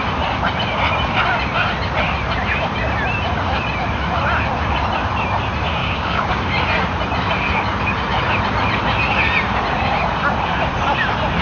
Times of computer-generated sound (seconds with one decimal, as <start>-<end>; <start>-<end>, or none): 5.8-6.4